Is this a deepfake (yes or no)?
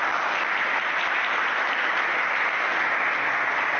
no